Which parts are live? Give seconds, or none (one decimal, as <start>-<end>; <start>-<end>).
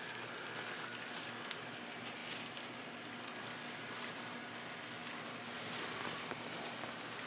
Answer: 0.0-7.3